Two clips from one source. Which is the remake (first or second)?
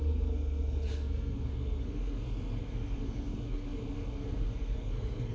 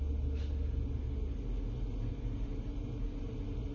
first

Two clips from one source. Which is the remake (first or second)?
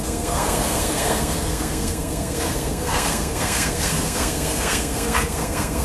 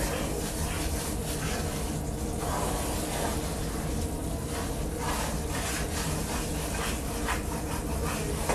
first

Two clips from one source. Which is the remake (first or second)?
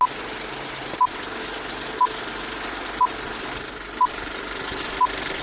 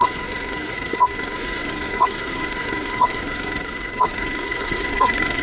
second